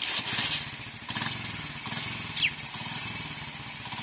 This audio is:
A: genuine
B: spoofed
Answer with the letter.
A